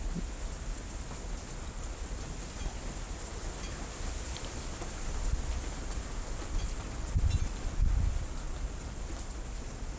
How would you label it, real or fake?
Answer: real